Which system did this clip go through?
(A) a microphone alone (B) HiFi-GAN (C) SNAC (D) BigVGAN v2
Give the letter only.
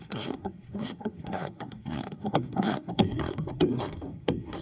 C